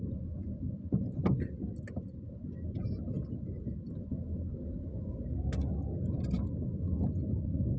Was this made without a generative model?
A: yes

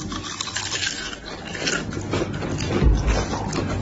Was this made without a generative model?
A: yes